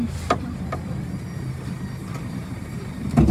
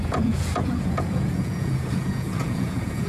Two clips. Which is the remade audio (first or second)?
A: second